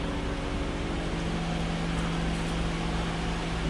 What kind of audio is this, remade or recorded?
recorded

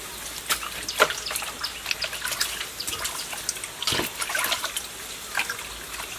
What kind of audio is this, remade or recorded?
recorded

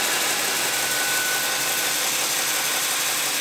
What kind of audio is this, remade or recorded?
recorded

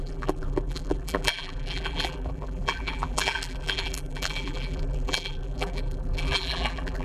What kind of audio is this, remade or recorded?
remade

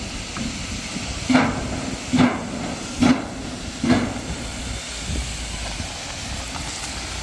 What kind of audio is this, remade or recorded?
recorded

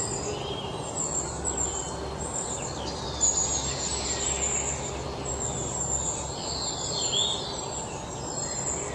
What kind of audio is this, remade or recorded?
recorded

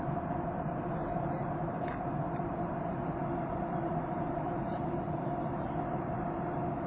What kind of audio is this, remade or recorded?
remade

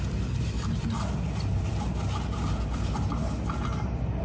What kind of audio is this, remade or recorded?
recorded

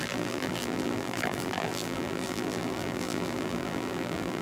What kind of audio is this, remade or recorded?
remade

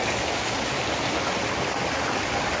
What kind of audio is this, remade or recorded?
recorded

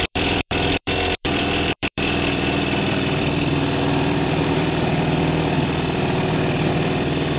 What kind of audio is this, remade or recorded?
remade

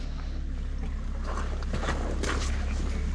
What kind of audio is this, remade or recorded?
recorded